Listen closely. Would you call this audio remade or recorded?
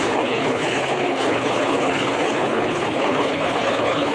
remade